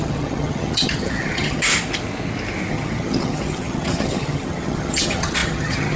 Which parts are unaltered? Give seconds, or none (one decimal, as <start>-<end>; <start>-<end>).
1.7-2.7